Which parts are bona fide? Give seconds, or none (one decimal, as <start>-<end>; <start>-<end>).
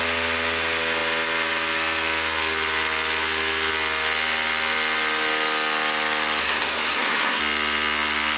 0.0-6.4; 7.4-8.4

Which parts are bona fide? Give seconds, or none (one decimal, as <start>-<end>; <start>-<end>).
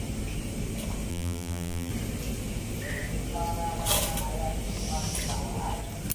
0.0-1.1; 1.9-6.1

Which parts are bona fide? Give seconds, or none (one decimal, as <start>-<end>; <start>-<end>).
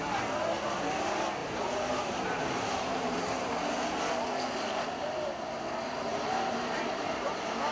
0.0-1.4; 3.5-6.1; 7.3-7.7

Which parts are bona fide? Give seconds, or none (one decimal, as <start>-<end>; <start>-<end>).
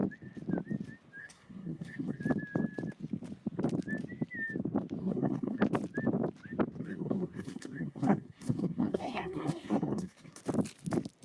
0.0-1.2; 2.2-5.0; 5.6-6.8; 10.4-11.2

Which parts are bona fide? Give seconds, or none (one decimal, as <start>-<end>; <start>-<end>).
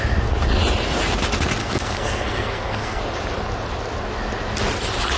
0.0-1.6; 3.0-5.2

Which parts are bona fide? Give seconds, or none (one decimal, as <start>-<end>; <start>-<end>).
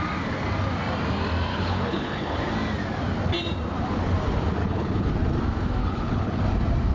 0.0-1.5; 2.5-4.6; 5.1-5.8; 6.4-6.9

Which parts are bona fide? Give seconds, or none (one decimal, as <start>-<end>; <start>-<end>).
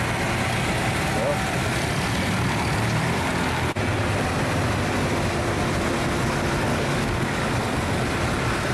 0.0-6.7; 7.5-8.7